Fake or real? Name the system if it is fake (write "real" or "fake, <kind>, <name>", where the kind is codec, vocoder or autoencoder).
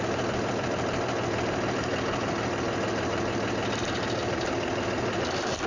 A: fake, vocoder, BigVGAN v2